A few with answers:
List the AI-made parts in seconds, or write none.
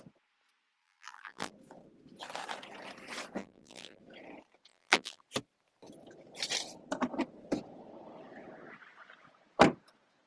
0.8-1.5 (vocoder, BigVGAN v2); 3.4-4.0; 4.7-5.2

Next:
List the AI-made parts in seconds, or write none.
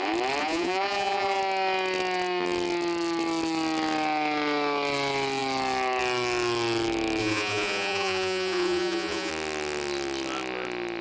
0.4-1.4 (vocoder, Vocos); 7.2-9.3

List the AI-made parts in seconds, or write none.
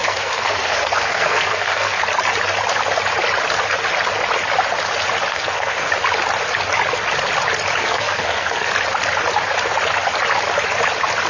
0.0-2.0 (codec, SNAC); 5.3-5.9; 7.8-8.7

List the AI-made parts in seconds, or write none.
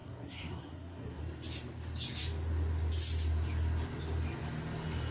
0.0-1.2 (codec, SNAC)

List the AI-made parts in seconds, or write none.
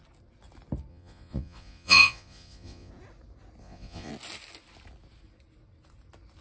0.9-2.9 (vocoder, Vocos); 3.6-4.1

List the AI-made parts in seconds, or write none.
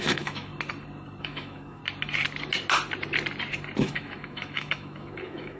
0.0-0.5 (autoencoder, DAC-VAE); 1.2-1.8; 3.8-5.6